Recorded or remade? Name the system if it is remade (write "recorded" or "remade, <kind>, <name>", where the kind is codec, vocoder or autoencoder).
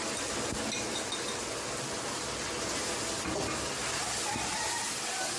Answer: recorded